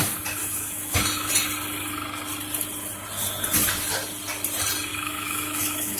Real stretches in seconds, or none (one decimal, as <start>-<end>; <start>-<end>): 0.0-0.4; 1.3-4.9